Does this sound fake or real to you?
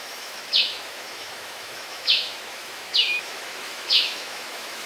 fake